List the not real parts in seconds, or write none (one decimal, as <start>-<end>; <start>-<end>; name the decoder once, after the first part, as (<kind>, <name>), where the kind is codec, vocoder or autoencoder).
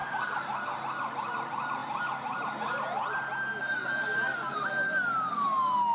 none